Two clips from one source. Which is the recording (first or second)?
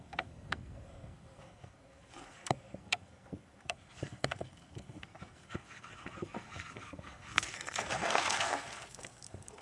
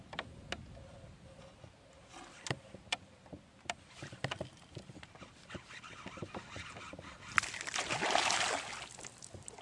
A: second